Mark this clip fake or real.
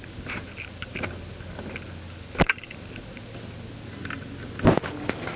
real